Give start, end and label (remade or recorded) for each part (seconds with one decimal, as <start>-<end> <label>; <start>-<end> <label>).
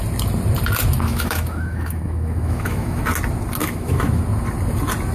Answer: 0.0-1.1 recorded; 1.1-3.0 remade; 3.0-3.6 recorded; 3.6-4.2 remade; 4.2-5.1 recorded